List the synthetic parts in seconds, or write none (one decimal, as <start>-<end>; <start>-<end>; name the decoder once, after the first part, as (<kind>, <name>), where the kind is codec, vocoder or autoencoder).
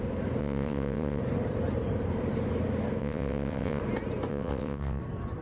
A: 0.4-1.2 (vocoder, WaveNeXt); 3.0-3.8; 4.3-5.0